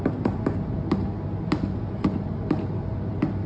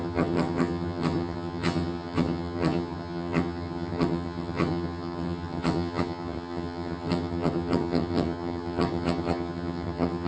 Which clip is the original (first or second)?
first